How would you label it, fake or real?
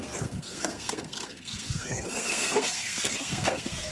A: fake